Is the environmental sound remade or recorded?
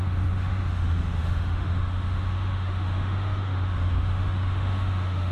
remade